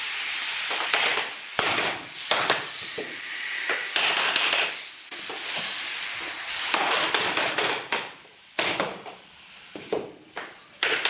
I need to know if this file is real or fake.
real